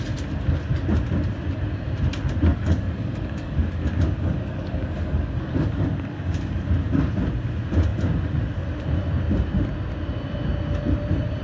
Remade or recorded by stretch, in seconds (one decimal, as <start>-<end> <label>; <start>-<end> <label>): 0.0-2.5 recorded; 2.5-6.7 remade; 6.7-11.4 recorded